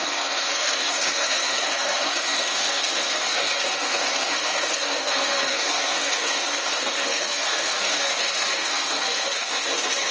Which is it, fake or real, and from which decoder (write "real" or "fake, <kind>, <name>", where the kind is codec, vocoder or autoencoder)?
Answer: fake, codec, SNAC